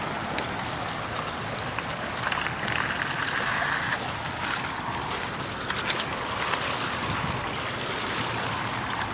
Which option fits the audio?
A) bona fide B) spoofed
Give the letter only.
A